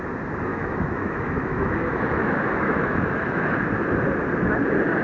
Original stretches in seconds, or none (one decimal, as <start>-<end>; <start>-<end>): 0.0-0.5; 3.5-5.0